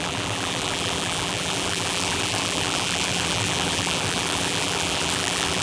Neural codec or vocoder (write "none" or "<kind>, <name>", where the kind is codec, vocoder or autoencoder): vocoder, BigVGAN v2